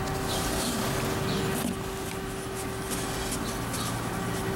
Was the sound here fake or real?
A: real